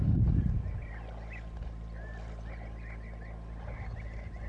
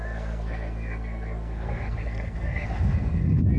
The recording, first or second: first